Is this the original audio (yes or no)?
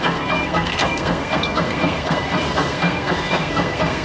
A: no